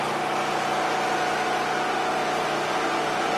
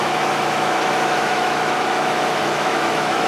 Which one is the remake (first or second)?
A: second